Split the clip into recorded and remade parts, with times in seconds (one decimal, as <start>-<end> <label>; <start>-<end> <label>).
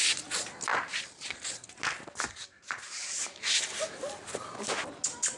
0.0-5.4 recorded